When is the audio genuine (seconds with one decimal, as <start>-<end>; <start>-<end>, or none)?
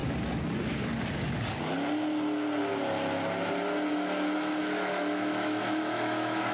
0.0-3.9